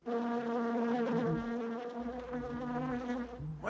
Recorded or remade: recorded